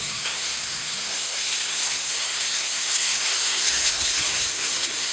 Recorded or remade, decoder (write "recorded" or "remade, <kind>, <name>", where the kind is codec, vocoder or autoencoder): remade, codec, SNAC